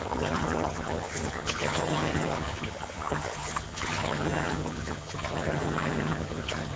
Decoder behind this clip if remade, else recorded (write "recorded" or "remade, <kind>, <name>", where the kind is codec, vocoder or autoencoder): remade, vocoder, HiFi-GAN